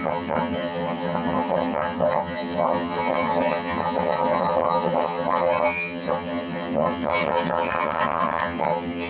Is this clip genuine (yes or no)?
no